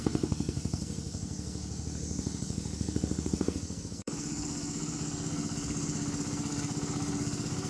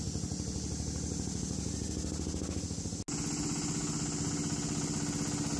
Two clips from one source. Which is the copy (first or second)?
first